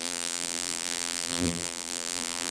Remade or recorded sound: remade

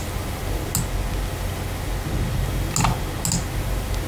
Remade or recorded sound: recorded